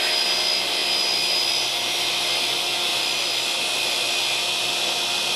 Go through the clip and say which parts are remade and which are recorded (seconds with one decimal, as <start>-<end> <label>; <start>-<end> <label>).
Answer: 0.0-2.9 recorded; 2.9-5.4 remade